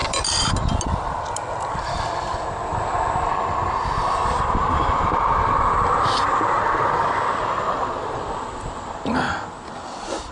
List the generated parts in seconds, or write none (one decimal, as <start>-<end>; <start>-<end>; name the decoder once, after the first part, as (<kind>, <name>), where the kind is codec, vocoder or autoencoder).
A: none